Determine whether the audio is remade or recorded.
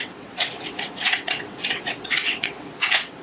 remade